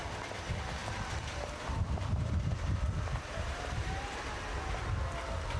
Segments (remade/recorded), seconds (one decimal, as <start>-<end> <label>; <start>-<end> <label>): 0.0-0.8 recorded; 0.8-4.2 remade; 4.2-5.6 recorded